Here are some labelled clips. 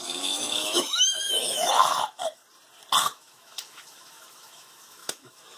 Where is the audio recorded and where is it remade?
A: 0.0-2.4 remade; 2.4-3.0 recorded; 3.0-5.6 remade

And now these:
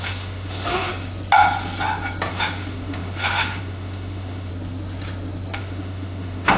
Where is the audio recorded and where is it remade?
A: 0.0-0.9 remade; 0.9-2.3 recorded; 2.3-4.5 remade; 4.5-5.6 recorded; 5.6-6.6 remade